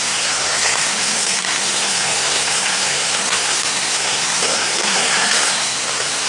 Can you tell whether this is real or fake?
fake